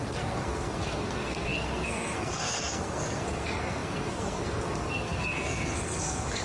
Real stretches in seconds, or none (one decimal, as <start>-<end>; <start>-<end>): none